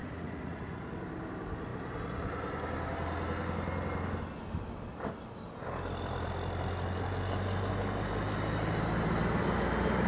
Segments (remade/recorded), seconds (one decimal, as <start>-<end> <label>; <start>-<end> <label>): 0.0-1.0 remade; 1.0-10.1 recorded